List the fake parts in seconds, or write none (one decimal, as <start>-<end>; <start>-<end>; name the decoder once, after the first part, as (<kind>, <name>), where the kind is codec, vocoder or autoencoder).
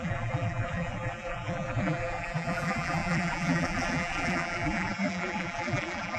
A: 0.0-6.2 (vocoder, BigVGAN v2)